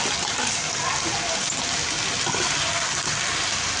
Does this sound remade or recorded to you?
recorded